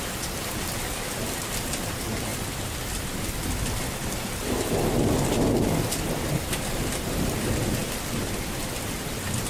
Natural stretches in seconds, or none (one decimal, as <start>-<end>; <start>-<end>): 0.0-9.5